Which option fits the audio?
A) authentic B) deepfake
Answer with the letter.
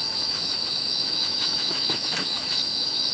B